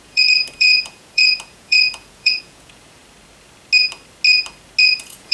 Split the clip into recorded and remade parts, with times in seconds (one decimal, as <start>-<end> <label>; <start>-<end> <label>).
0.0-3.0 remade; 3.0-4.8 recorded; 4.8-5.3 remade